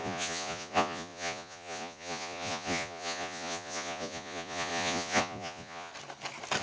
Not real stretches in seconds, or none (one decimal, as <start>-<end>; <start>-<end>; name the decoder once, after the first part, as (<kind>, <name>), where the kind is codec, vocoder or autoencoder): 0.0-5.9 (vocoder, Vocos)